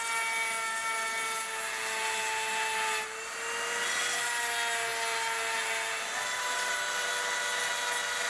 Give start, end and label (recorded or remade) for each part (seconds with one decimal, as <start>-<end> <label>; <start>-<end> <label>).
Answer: 0.0-8.3 recorded